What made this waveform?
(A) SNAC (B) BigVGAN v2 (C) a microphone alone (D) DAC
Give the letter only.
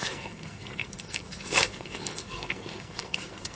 A